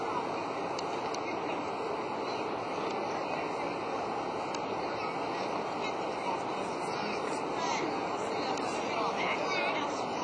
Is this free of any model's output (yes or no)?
yes